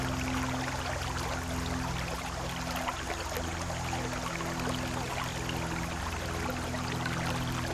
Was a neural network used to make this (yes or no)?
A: no